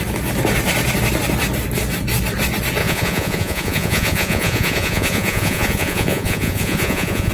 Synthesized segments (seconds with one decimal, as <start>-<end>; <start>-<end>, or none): 2.8-7.3